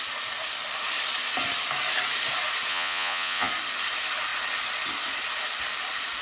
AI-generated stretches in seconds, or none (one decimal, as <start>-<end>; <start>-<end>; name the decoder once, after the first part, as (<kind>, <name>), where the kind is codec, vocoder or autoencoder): 2.7-3.5 (vocoder, Vocos)